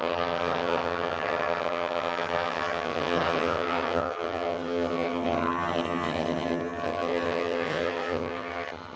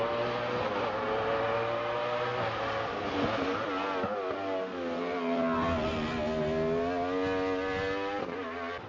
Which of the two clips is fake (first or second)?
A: first